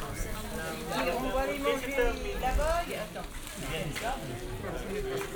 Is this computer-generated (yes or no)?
no